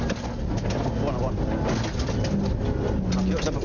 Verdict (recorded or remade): recorded